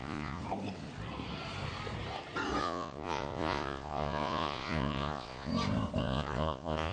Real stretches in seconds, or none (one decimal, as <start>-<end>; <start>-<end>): 0.4-2.6; 5.5-6.0